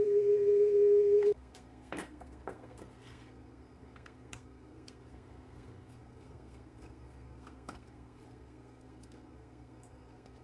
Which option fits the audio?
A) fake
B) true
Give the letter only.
A